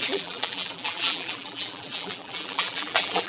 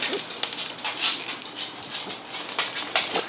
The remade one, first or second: first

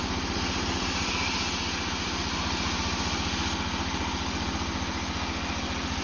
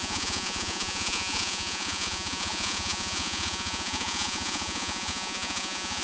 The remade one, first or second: second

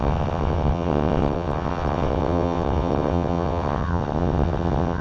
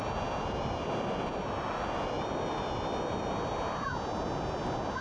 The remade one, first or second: first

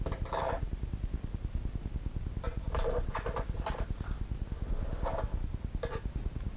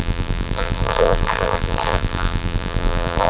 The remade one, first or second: second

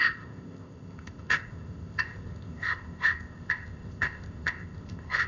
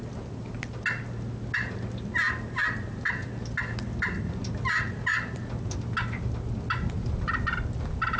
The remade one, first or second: first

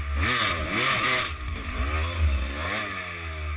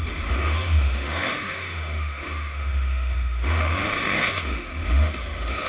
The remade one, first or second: second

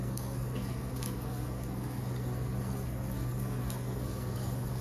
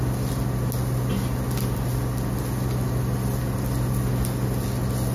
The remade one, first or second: first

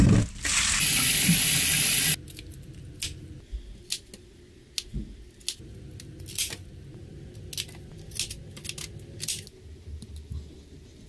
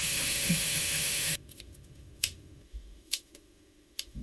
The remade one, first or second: second